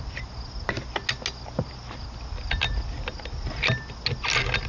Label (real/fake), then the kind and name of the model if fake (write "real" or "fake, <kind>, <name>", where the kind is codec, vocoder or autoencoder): real